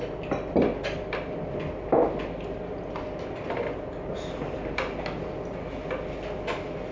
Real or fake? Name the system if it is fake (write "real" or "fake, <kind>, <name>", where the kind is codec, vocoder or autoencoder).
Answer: real